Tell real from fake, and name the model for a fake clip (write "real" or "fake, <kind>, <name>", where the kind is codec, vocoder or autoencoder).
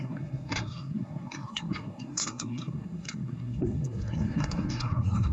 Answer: fake, codec, SNAC